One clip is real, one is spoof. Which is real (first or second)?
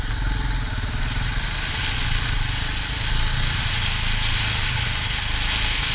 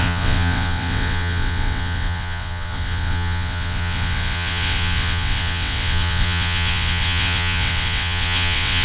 first